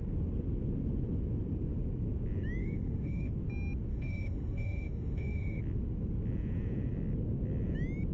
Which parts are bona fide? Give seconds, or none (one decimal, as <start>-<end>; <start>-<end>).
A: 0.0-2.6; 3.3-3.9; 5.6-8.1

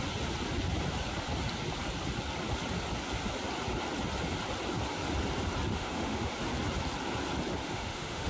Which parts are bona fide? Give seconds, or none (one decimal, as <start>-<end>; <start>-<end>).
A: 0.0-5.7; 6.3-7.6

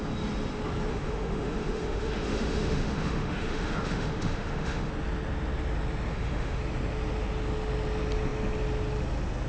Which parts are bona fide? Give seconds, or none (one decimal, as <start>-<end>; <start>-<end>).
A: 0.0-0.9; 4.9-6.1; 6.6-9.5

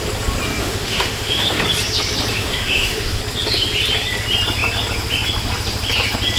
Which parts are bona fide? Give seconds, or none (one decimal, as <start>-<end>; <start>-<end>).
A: 0.0-0.6; 1.6-2.3; 3.2-6.4